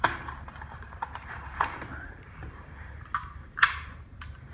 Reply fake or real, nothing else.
fake